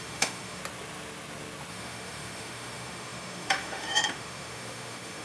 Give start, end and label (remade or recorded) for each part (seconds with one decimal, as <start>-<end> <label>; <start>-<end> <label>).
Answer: 0.0-0.6 remade; 0.6-1.7 recorded; 1.7-5.2 remade